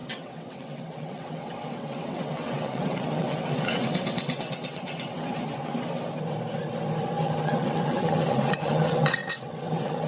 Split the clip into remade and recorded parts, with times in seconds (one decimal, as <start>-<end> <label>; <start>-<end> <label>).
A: 0.0-5.7 remade; 5.7-7.2 recorded; 7.2-10.1 remade